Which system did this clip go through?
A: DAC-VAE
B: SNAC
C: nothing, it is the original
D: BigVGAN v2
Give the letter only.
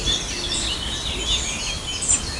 C